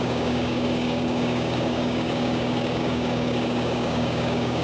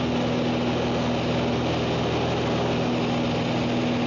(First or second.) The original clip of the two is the second